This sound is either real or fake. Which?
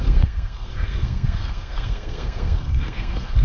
fake